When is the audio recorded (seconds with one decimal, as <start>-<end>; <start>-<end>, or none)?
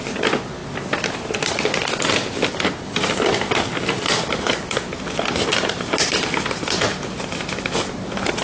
0.0-8.4